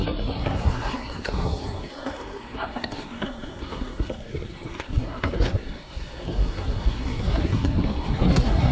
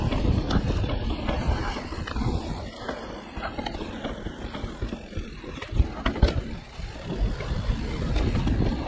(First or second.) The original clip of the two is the second